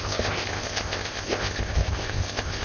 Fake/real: fake